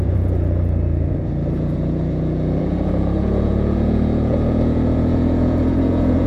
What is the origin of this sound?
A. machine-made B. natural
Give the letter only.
A